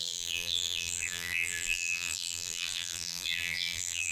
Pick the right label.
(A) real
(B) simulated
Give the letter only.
B